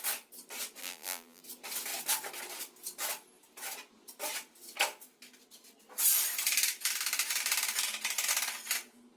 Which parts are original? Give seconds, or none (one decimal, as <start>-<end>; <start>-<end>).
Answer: 0.0-0.8; 1.4-9.2